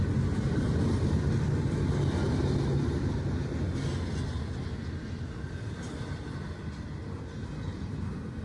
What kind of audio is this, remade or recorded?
recorded